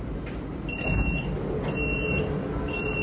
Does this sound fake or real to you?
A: real